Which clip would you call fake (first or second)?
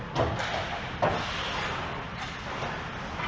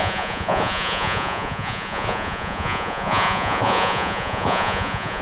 second